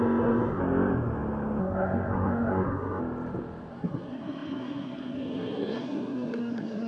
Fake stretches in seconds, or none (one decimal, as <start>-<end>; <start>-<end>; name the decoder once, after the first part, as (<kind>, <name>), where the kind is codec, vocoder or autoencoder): 0.0-0.6 (codec, SNAC); 1.6-3.0; 3.7-6.9